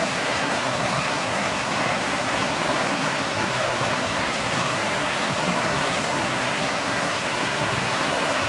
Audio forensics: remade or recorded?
remade